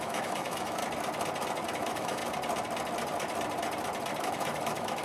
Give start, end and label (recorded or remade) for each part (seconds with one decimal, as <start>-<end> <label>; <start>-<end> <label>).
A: 0.0-0.8 remade; 0.8-1.7 recorded; 1.7-2.2 remade; 2.2-4.2 recorded; 4.2-5.0 remade